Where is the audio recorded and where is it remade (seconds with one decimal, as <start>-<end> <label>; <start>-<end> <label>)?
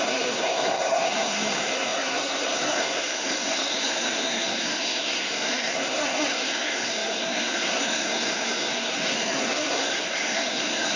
0.0-11.0 remade